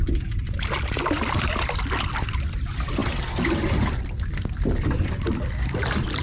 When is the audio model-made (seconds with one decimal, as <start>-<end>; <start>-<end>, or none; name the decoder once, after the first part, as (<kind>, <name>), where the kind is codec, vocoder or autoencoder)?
none